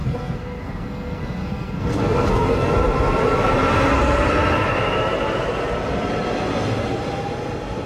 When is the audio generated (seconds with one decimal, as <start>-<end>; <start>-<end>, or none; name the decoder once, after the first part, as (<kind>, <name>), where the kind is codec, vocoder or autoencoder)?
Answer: 0.0-2.7 (codec, SNAC)